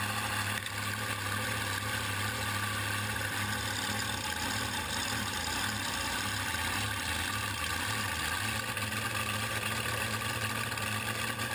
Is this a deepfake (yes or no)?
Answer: no